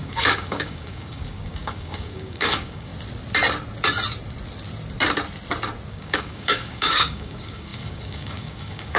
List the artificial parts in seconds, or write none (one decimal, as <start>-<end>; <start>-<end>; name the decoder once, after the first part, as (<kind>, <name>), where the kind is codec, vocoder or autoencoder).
0.0-2.9 (codec, DAC); 5.9-9.0